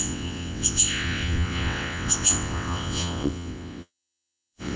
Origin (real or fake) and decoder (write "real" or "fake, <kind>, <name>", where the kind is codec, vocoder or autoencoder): fake, vocoder, WaveNeXt